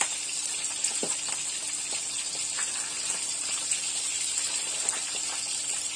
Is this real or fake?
real